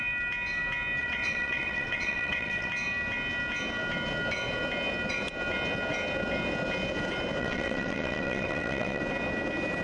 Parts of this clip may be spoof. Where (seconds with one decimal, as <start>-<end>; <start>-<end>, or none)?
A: 1.0-2.7; 7.4-9.0